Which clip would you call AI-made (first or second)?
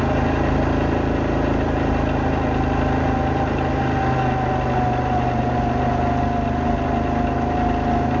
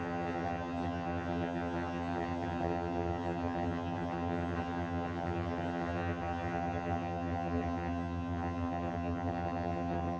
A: second